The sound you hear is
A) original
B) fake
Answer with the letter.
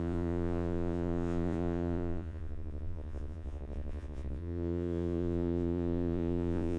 B